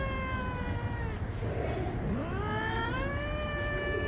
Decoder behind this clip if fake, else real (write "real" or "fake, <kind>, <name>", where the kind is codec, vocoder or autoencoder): real